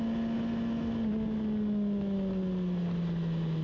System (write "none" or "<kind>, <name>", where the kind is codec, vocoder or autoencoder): none